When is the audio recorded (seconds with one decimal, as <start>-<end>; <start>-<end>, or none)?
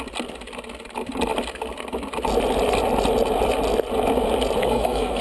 0.0-4.6